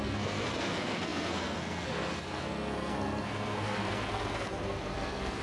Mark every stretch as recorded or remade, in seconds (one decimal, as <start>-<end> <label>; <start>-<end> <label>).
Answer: 0.0-5.4 remade